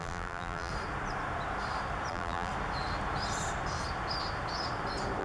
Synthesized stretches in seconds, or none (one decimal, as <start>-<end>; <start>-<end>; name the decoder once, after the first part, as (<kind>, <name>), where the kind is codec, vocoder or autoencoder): 0.0-0.7 (vocoder, BigVGAN v2); 2.1-2.5